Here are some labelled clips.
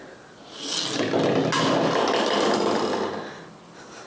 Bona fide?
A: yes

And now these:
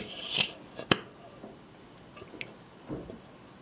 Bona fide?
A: yes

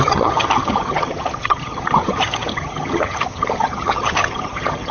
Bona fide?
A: no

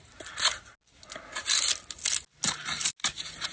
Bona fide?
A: yes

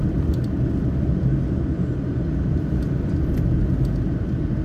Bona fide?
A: yes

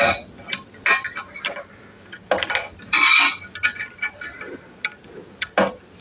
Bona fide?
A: yes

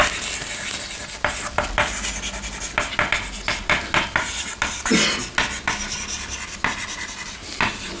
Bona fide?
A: yes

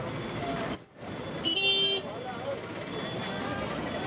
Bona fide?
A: yes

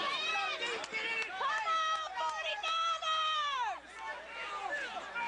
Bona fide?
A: no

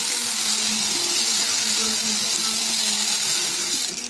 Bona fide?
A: yes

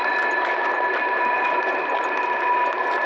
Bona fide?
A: yes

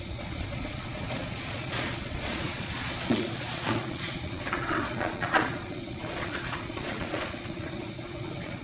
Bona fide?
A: no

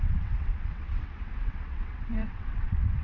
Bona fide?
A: no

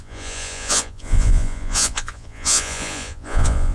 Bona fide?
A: no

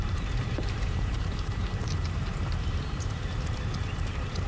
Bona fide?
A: no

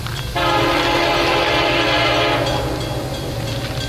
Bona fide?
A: yes